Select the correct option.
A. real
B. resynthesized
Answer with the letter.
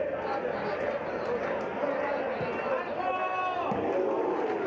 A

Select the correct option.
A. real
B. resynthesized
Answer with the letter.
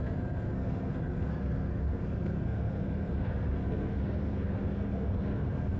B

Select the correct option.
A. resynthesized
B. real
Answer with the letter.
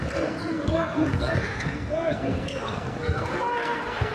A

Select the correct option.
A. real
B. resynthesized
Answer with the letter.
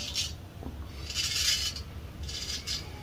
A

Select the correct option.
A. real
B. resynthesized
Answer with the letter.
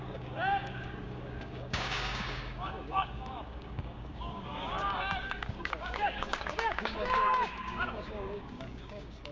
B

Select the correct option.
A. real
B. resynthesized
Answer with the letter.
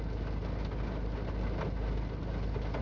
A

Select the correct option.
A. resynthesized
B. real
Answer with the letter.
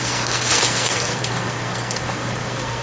A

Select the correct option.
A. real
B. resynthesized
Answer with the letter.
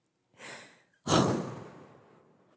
A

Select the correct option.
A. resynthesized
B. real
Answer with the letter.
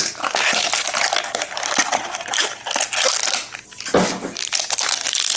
B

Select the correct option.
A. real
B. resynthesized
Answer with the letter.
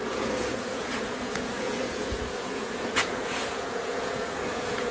B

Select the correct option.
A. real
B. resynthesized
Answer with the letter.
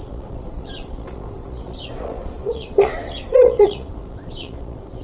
B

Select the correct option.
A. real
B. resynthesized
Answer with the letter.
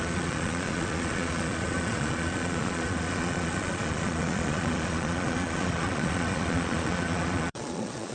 B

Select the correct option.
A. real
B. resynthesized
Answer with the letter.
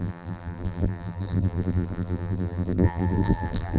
B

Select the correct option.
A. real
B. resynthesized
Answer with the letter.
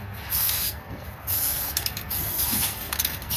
B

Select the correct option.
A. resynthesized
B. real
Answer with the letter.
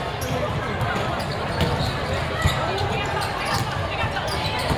B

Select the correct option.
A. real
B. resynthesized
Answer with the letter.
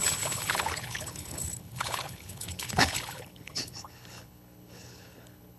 B